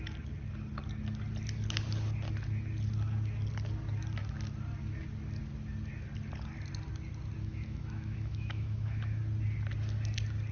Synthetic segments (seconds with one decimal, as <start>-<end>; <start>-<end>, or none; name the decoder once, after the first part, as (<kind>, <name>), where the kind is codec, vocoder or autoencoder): 7.4-9.2 (autoencoder, DAC-VAE)